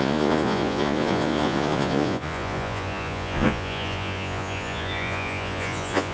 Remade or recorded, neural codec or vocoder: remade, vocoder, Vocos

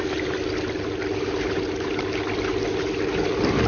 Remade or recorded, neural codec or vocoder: recorded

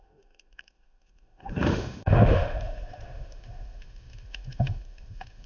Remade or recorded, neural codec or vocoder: remade, autoencoder, DAC-VAE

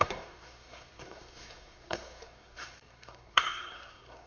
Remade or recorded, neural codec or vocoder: remade, codec, SNAC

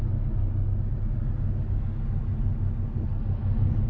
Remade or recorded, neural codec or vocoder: recorded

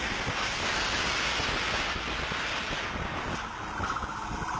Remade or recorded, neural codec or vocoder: recorded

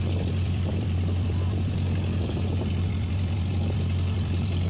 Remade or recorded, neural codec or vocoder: remade, vocoder, BigVGAN v2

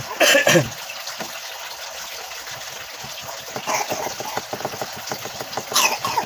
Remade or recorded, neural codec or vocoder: recorded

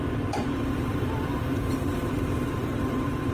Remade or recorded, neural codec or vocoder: remade, vocoder, BigVGAN v2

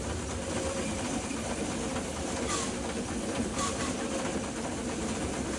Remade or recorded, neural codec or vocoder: remade, vocoder, BigVGAN v2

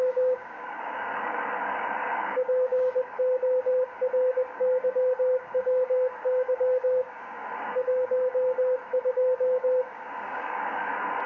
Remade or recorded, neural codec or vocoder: remade, codec, DAC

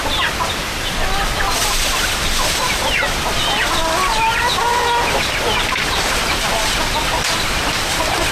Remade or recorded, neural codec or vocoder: recorded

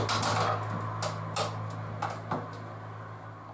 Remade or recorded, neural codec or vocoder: recorded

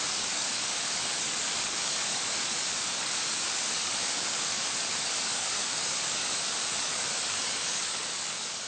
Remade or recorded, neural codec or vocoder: remade, codec, DAC